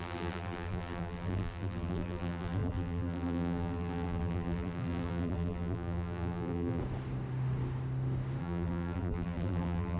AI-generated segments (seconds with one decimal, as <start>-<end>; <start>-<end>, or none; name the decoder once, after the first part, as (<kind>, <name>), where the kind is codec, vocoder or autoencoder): 0.0-6.8 (vocoder, BigVGAN v2); 8.4-10.0